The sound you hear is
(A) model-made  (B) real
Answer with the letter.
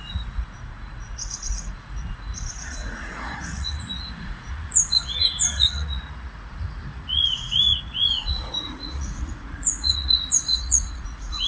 A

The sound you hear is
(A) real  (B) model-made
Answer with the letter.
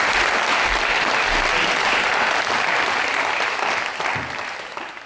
A